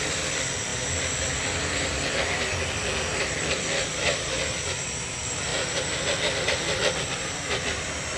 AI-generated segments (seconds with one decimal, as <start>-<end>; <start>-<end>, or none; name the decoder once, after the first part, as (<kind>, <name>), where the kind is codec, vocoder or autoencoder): none